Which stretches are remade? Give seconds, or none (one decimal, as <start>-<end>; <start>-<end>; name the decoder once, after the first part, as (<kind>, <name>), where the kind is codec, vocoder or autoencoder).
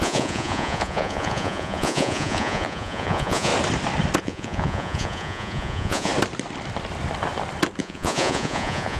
0.0-3.5 (vocoder, Vocos); 4.2-6.1; 7.8-9.0